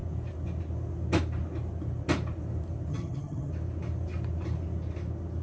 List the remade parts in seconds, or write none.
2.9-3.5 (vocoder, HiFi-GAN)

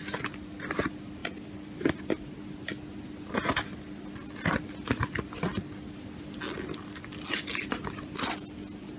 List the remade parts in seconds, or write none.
1.2-2.0 (vocoder, BigVGAN v2)

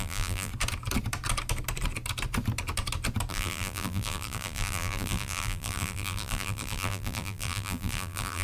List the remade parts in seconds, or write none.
0.0-0.5 (vocoder, BigVGAN v2); 3.3-8.4

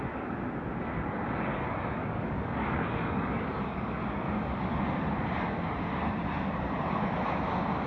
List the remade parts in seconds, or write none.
1.5-4.8 (codec, DAC)

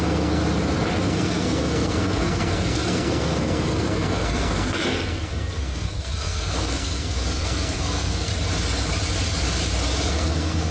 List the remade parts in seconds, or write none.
0.0-0.4 (codec, SNAC); 1.0-8.3; 10.1-10.7

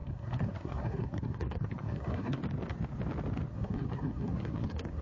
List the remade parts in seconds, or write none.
0.0-2.4 (codec, SNAC); 3.5-5.0

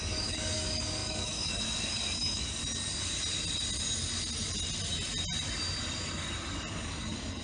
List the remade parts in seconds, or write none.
0.0-2.6 (codec, DAC); 6.7-7.4